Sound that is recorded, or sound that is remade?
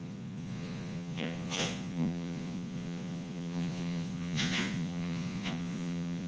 remade